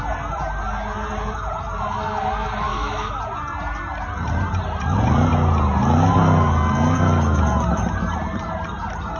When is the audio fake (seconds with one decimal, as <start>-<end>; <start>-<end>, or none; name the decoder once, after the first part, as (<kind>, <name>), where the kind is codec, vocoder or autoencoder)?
2.7-3.2 (autoencoder, DAC-VAE)